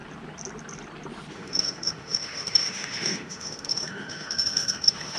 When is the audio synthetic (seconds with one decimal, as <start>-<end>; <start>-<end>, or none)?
1.3-5.2